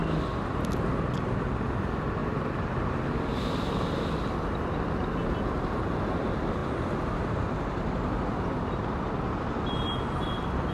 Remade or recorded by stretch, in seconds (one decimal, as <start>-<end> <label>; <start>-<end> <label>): 0.0-2.2 recorded; 2.2-3.1 remade; 3.1-10.7 recorded